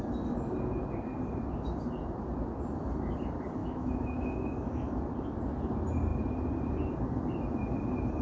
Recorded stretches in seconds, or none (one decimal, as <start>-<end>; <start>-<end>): 0.0-3.6; 5.0-8.2